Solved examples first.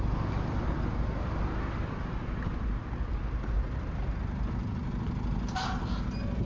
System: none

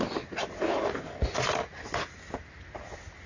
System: none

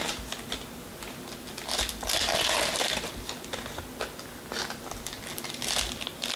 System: none